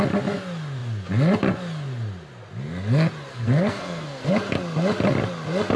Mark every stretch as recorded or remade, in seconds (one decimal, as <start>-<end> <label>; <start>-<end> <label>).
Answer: 0.0-3.3 recorded; 3.3-4.3 remade; 4.3-5.8 recorded